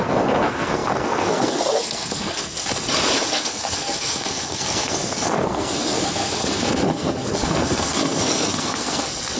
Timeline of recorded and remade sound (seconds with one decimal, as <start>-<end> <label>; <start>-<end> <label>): 0.0-2.6 remade; 2.6-3.3 recorded; 3.3-9.4 remade

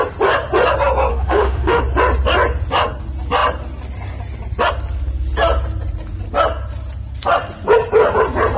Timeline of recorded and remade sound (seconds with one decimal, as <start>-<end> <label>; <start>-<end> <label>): 0.0-1.1 recorded; 1.1-1.8 remade; 1.8-8.6 recorded

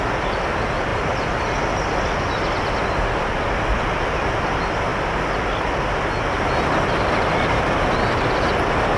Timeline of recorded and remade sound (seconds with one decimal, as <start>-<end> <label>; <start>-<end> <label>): 0.0-9.0 recorded

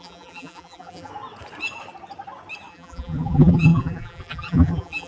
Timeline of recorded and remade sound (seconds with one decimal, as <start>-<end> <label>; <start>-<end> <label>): 0.0-1.1 remade; 1.1-2.7 recorded; 2.7-5.1 remade

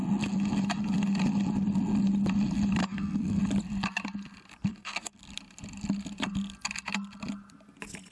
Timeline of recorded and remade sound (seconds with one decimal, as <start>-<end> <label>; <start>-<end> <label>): 0.0-2.8 recorded; 2.8-3.4 remade; 3.4-4.7 recorded; 4.7-5.2 remade; 5.2-8.1 recorded

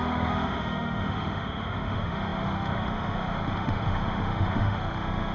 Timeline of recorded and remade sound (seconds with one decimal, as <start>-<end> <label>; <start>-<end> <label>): 0.0-5.3 remade